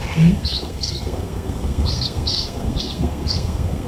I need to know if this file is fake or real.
fake